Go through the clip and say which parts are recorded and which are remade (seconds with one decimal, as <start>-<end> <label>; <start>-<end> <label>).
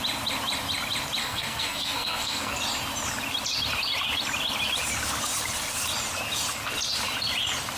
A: 0.0-1.2 recorded; 1.2-2.6 remade; 2.6-7.8 recorded